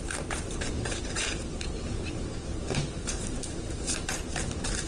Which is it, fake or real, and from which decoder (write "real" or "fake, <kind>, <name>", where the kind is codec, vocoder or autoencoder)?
fake, vocoder, BigVGAN v2